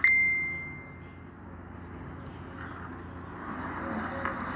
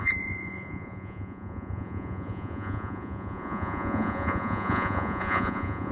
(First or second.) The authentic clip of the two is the first